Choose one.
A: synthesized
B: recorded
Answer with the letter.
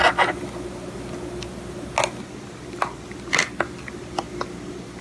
B